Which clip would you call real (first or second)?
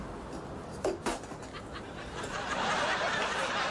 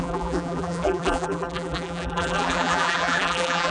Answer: first